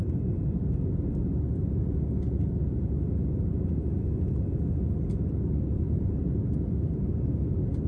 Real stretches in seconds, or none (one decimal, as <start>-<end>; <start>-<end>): 0.0-5.7; 6.2-7.9